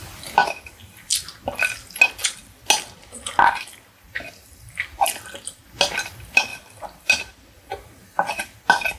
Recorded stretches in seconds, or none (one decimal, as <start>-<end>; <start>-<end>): 0.0-6.5; 7.7-9.0